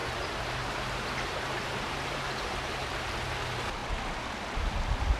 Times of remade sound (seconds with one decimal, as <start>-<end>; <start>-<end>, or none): 0.0-3.1